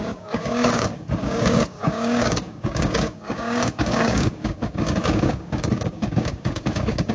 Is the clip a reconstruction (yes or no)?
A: yes